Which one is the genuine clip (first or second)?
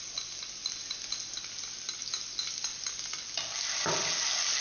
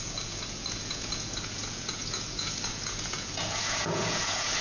first